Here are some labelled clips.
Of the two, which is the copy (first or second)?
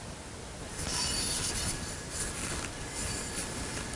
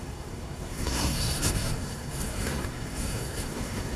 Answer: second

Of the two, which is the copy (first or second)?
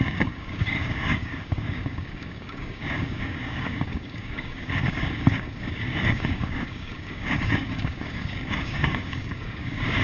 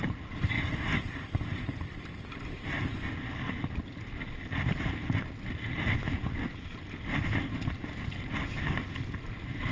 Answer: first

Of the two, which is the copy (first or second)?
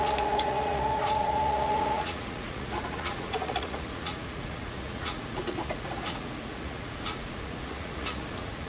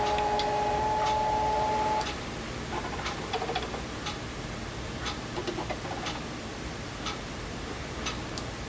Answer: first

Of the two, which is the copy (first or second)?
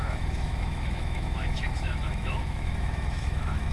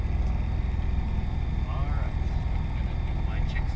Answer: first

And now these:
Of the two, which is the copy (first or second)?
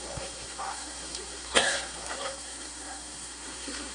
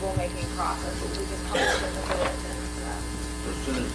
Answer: first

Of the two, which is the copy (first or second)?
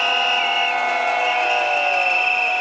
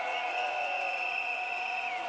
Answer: second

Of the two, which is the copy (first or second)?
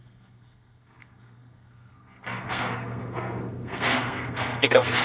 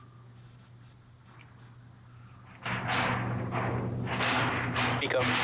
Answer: first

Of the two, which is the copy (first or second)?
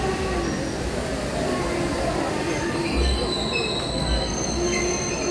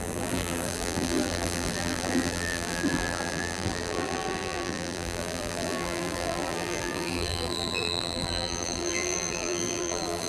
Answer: second